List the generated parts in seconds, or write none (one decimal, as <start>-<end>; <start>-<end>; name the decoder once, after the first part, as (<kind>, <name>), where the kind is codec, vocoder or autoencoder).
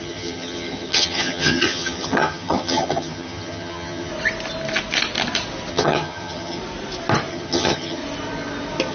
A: 0.0-4.1 (vocoder, HiFi-GAN); 5.7-6.6; 7.3-8.0